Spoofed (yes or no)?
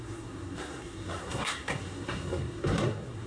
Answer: yes